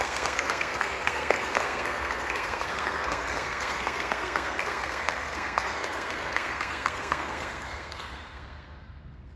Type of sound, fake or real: fake